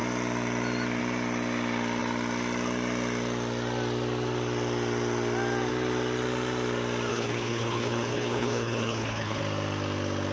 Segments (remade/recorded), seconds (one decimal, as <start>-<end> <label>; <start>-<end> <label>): 0.0-7.1 recorded; 7.1-9.4 remade; 9.4-10.3 recorded